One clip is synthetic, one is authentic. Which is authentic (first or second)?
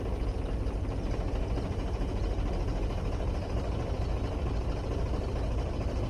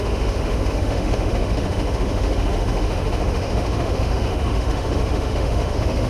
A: first